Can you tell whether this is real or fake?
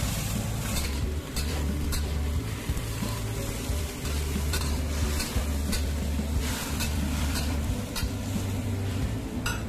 fake